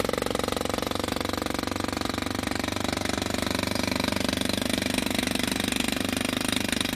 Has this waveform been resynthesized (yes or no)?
no